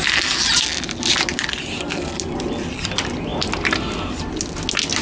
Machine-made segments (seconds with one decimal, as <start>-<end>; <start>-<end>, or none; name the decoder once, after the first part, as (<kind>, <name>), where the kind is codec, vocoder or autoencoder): none